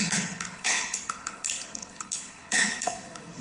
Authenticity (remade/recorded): remade